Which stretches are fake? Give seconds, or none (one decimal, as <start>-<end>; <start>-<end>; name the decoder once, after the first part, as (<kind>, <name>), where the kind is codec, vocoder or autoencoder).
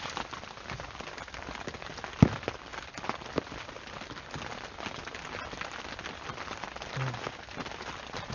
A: none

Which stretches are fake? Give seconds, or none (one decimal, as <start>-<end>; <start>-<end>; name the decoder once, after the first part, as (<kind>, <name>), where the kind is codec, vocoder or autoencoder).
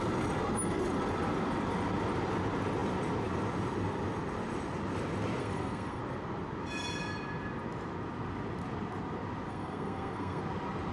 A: 5.4-6.0 (codec, SNAC); 9.5-10.4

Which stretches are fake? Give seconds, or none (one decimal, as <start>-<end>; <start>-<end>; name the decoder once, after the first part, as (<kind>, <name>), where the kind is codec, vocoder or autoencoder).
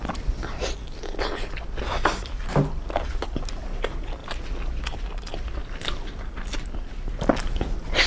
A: none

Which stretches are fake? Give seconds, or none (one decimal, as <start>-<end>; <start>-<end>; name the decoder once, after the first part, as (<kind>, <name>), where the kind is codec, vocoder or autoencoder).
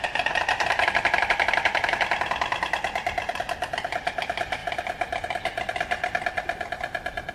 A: none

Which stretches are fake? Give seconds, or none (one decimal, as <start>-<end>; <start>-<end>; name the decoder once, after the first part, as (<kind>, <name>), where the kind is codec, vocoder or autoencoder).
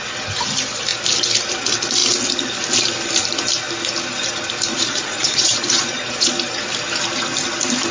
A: 4.7-6.3 (vocoder, Vocos)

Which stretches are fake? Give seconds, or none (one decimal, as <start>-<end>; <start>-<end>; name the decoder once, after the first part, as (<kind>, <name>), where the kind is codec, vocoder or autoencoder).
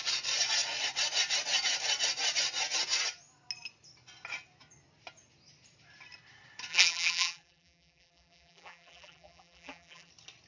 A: 6.7-10.1 (vocoder, BigVGAN v2)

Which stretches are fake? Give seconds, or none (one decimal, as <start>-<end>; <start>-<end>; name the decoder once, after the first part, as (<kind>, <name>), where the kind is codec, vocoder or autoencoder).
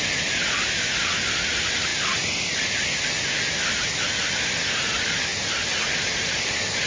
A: none